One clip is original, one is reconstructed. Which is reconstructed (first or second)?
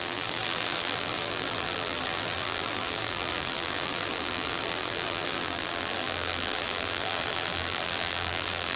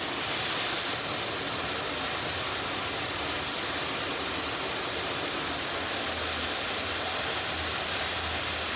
first